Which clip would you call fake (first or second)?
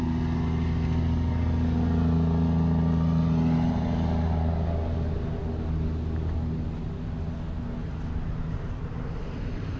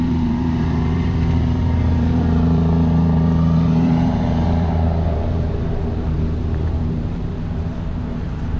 second